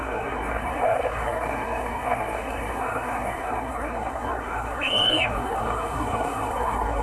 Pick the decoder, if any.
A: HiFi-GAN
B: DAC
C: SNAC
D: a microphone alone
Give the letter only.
C